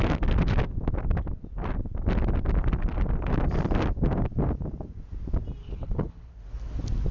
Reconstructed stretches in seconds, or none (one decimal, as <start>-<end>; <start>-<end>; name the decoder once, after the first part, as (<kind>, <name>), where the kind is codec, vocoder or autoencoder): 5.6-6.3 (codec, HILCodec)

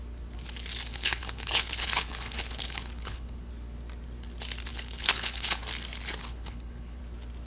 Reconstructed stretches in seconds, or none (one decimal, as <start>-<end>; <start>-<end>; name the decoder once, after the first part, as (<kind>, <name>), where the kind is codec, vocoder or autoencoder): 0.9-3.5 (codec, HILCodec); 4.7-5.6; 6.2-7.0

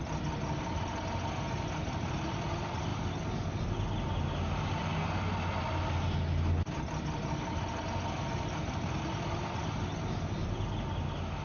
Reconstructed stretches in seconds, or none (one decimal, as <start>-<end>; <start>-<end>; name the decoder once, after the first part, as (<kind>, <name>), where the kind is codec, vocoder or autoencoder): none

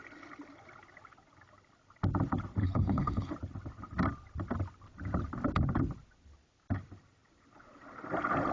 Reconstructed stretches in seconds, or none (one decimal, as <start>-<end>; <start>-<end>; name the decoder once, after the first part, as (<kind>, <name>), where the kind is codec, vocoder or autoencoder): 2.6-3.3 (codec, HILCodec)

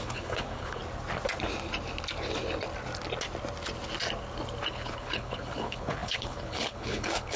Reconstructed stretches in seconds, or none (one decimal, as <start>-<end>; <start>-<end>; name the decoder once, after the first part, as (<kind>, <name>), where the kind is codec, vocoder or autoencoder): 0.0-0.8 (codec, HILCodec); 4.7-7.4

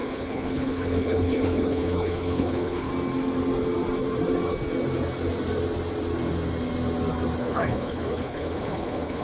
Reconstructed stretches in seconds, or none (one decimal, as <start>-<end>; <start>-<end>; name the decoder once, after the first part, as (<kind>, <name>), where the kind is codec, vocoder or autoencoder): 0.0-2.9 (codec, HILCodec); 7.4-9.2

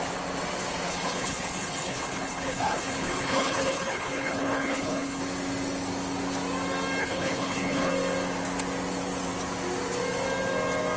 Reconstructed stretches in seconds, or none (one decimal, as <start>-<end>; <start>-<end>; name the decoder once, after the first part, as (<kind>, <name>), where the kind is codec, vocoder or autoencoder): 0.9-5.2 (codec, HILCodec); 7.0-7.9

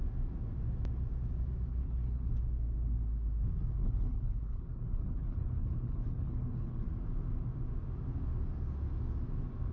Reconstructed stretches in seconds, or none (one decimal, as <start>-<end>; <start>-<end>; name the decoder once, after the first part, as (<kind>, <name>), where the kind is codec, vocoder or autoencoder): 1.7-2.3 (codec, HILCodec); 3.8-6.9